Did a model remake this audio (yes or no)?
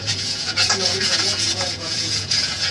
yes